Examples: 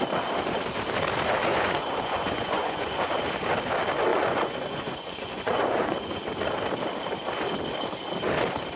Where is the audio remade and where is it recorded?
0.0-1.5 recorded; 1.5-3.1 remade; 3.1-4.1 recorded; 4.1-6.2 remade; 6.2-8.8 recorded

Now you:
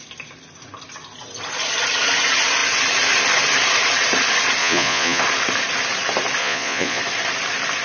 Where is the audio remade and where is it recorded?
0.0-4.6 recorded; 4.6-5.2 remade; 5.2-6.4 recorded; 6.4-7.0 remade; 7.0-7.8 recorded

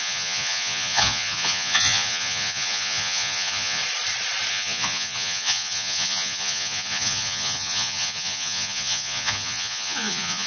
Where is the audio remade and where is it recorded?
0.0-3.8 remade; 3.8-4.5 recorded; 4.5-10.5 remade

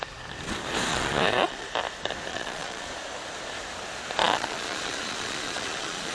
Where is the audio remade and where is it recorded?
0.0-0.9 recorded; 0.9-1.7 remade; 1.7-2.3 recorded; 2.3-2.9 remade; 2.9-4.2 recorded; 4.2-6.1 remade

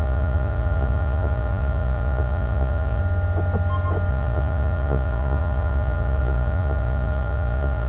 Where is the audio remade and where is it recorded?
0.0-3.0 remade; 3.0-4.1 recorded; 4.1-7.9 remade

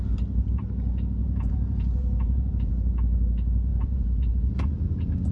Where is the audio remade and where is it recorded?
0.0-1.2 recorded; 1.2-2.7 remade; 2.7-3.7 recorded; 3.7-5.3 remade

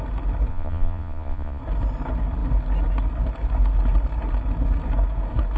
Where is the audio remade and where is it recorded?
0.0-0.5 recorded; 0.5-1.6 remade; 1.6-5.6 recorded